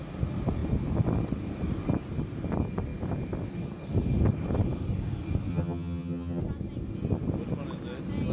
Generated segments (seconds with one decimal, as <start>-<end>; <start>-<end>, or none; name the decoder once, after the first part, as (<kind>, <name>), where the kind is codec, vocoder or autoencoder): 5.5-6.4 (vocoder, HiFi-GAN)